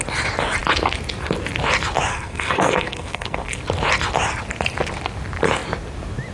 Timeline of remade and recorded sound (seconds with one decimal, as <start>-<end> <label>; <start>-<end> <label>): 0.0-2.1 recorded; 2.1-3.6 remade; 3.6-6.3 recorded